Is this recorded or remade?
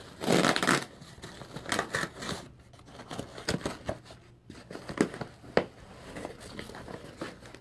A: recorded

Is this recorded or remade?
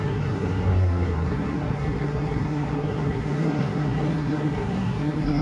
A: remade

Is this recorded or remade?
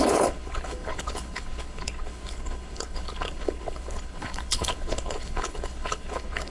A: remade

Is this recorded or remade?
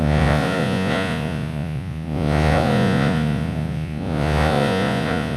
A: remade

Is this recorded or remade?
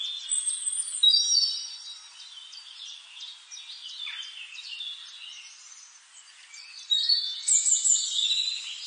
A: recorded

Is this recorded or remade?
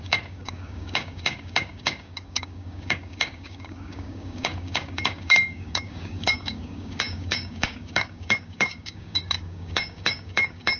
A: remade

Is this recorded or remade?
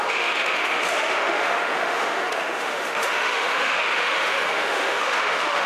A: remade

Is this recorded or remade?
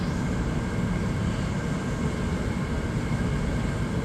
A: recorded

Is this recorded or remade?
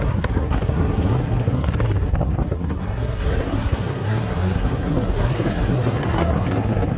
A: remade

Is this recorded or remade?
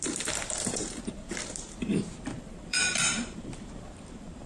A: remade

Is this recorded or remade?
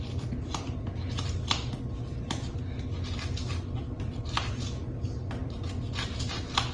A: recorded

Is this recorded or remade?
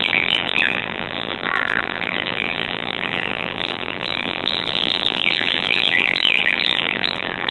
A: remade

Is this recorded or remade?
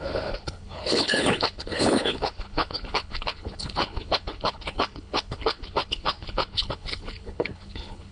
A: remade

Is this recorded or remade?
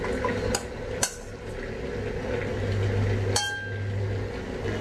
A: recorded